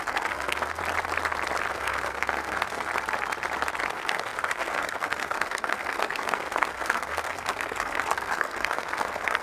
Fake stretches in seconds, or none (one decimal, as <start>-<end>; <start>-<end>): 0.0-0.8; 1.7-2.9; 3.9-9.4